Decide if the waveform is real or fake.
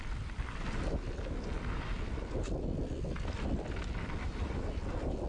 real